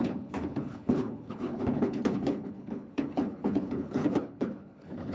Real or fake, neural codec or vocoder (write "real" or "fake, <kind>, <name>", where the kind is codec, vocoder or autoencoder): fake, codec, HILCodec